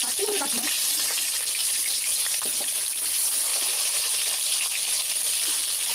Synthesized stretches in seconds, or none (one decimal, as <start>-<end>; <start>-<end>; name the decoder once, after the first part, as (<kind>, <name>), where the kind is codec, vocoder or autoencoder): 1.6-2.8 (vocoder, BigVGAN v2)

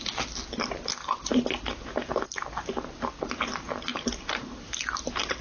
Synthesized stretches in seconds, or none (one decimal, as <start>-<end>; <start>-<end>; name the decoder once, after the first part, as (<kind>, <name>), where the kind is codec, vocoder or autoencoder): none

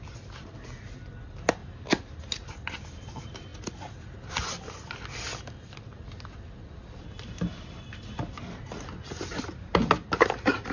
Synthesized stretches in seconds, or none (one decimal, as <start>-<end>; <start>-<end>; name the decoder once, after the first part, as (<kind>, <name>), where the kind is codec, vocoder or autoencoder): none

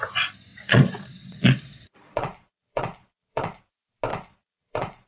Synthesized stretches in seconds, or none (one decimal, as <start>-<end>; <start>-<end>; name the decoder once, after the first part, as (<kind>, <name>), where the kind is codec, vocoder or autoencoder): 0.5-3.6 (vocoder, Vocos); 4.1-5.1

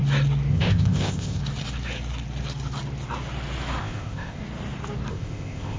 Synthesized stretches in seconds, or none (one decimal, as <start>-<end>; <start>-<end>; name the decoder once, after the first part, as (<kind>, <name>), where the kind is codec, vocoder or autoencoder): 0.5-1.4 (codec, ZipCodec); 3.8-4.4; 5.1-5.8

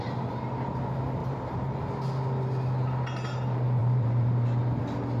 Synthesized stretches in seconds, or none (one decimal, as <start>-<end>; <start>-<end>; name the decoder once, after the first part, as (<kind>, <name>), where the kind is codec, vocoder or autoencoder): 1.2-1.8 (vocoder, BigVGAN v2); 3.8-4.8